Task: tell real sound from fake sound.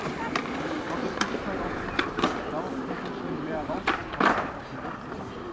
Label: fake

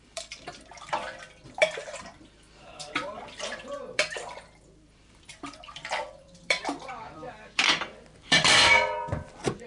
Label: fake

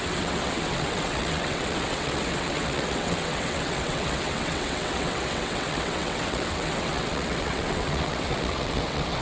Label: fake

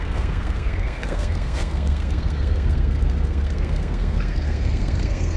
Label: fake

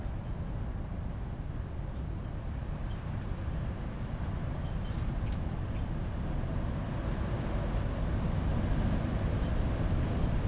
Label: real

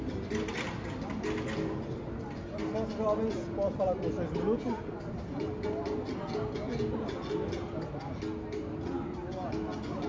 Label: real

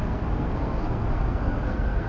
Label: fake